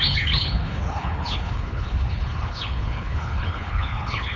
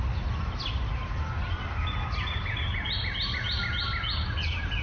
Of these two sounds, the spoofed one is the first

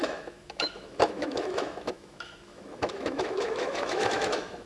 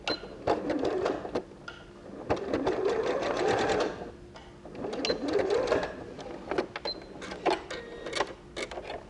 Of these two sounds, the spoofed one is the first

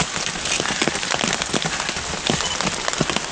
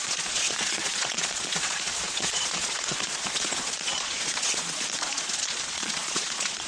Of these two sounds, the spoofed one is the second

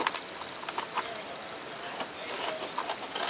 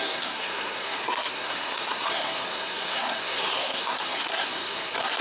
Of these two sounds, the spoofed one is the second